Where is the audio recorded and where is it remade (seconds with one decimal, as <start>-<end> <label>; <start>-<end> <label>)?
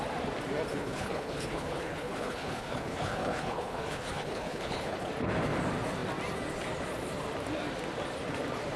0.0-0.7 recorded; 0.7-5.1 remade; 5.1-8.8 recorded